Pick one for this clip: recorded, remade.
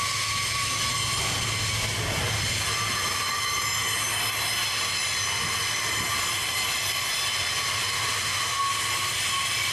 recorded